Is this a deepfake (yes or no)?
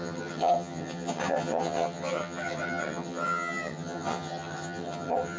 yes